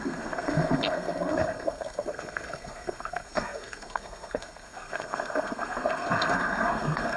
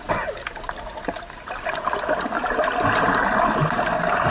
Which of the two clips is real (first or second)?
second